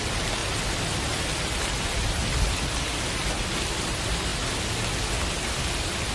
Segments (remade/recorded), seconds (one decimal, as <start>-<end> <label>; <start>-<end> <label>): 0.0-0.4 remade; 0.4-3.8 recorded; 3.8-4.3 remade; 4.3-6.1 recorded